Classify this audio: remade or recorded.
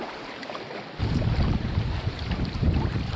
remade